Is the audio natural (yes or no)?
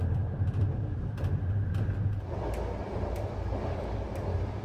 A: yes